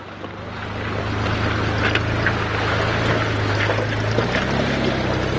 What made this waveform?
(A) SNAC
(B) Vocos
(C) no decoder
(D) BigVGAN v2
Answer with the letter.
C